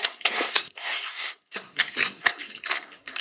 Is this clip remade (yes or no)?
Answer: yes